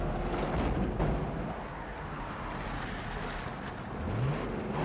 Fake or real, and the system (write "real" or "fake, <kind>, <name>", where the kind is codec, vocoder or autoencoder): real